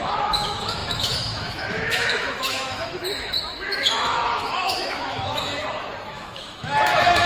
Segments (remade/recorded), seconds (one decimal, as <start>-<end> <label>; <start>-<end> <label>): 0.0-5.5 remade; 5.5-6.1 recorded; 6.1-7.3 remade